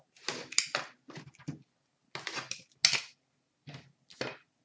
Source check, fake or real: real